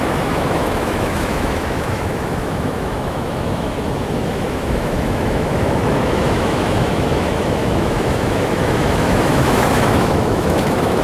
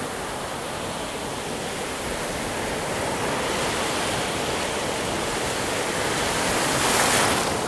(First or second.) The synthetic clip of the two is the first